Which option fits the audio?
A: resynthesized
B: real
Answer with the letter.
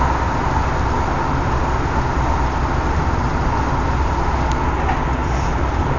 B